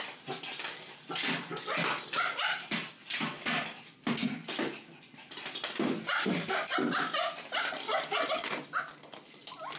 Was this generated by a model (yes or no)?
no